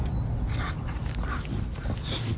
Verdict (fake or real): real